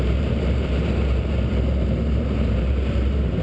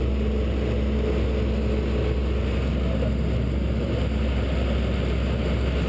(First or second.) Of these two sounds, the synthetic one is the first